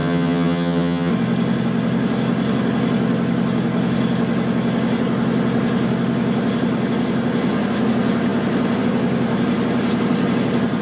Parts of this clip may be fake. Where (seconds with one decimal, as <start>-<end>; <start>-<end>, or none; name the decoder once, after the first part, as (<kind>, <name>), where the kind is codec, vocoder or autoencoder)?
0.0-1.1 (vocoder, HiFi-GAN)